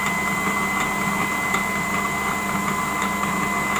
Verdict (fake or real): real